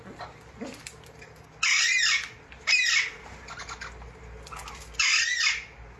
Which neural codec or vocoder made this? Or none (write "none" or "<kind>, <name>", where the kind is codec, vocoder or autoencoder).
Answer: none